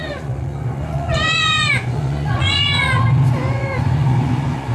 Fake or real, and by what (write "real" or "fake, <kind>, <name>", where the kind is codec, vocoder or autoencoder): fake, vocoder, Vocos